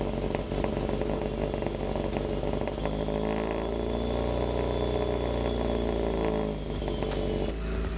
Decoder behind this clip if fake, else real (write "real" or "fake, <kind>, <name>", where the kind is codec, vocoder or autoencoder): real